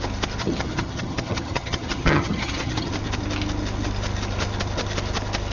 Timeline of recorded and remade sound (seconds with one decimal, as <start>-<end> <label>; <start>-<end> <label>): 0.0-0.4 recorded; 0.4-2.9 remade; 2.9-5.5 recorded